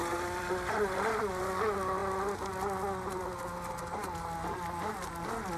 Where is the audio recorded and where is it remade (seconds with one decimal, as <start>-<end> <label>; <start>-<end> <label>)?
0.0-1.4 remade; 1.4-5.6 recorded